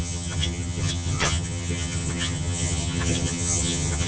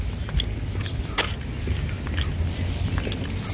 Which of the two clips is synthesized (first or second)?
first